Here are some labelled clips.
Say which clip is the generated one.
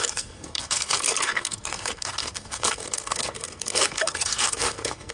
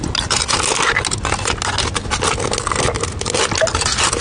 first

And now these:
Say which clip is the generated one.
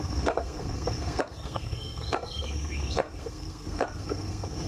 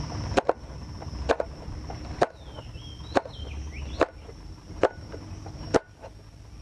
first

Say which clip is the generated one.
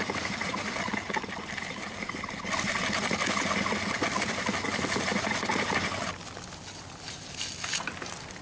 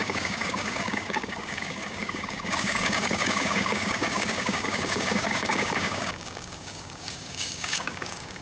second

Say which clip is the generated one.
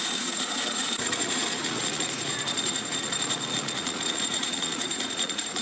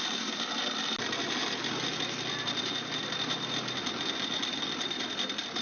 first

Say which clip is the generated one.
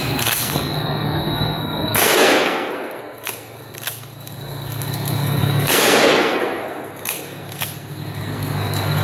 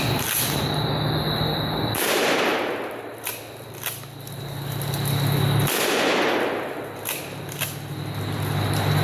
first